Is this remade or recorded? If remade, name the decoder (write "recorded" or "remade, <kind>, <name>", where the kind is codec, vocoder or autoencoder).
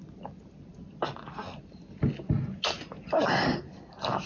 recorded